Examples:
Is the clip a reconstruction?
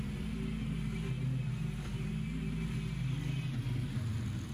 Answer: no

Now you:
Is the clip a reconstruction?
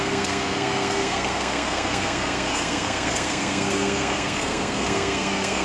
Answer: yes